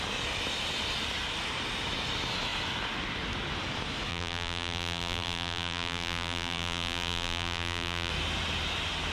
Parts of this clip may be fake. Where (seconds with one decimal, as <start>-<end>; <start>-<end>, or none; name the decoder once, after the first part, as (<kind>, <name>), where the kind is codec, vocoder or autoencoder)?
4.1-8.1 (vocoder, BigVGAN v2)